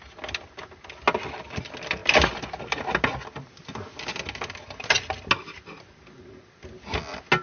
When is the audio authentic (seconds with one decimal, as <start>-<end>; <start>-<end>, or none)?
0.0-7.4